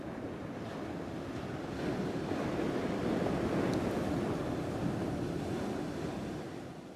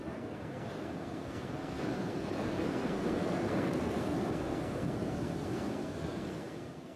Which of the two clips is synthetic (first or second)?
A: second